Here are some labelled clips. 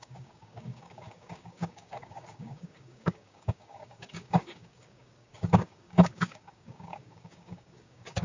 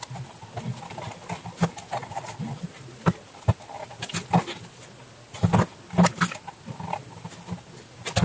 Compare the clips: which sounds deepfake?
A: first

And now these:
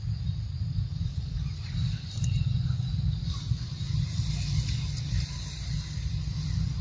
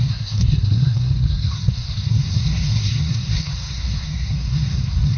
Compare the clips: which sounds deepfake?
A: second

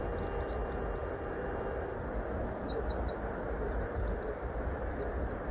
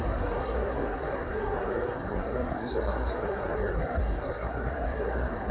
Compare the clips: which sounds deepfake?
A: second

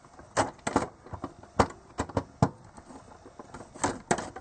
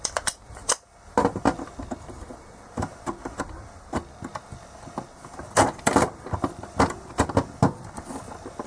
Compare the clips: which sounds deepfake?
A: second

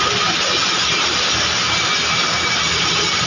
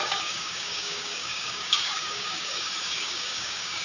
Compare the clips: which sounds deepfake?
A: second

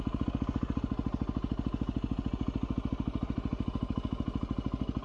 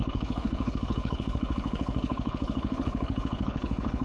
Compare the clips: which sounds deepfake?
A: second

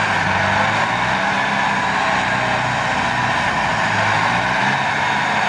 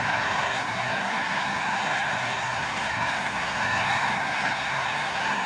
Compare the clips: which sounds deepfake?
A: second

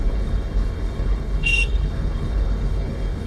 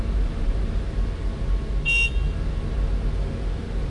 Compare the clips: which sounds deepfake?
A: first